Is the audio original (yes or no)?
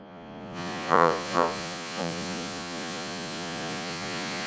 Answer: no